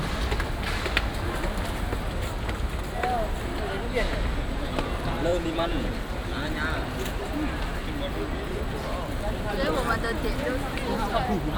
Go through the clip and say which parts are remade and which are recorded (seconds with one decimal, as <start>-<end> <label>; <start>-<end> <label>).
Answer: 0.0-5.3 recorded; 5.3-5.9 remade; 5.9-11.6 recorded